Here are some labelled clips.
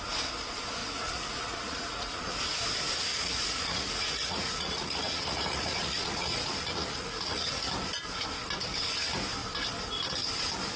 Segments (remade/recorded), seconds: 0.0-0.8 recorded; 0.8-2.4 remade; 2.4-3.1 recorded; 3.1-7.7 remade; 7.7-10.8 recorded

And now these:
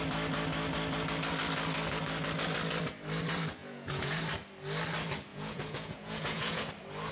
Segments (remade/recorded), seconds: 0.0-3.6 recorded; 3.6-4.2 remade; 4.2-5.3 recorded; 5.3-6.6 remade; 6.6-7.1 recorded